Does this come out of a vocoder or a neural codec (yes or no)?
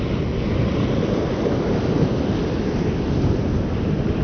no